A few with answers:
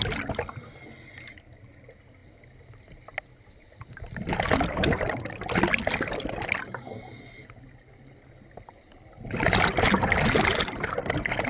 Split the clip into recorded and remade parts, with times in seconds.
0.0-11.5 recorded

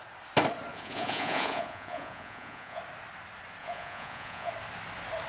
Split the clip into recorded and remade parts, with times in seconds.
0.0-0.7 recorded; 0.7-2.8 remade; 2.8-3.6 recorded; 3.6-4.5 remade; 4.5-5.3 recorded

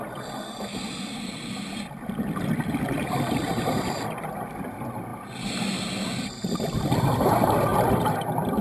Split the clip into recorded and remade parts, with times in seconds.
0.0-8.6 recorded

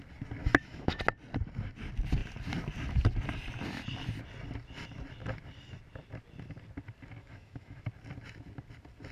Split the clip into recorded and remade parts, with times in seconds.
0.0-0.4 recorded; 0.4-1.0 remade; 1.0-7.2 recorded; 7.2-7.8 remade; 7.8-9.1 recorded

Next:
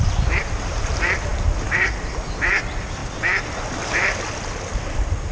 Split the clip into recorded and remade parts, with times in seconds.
0.0-3.0 remade; 3.0-3.7 recorded; 3.7-5.3 remade

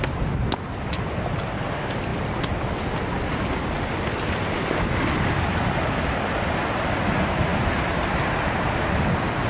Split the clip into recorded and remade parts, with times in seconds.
0.0-9.5 recorded

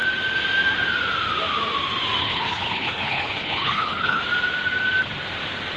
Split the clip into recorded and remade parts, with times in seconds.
0.0-2.2 recorded; 2.2-4.2 remade; 4.2-5.8 recorded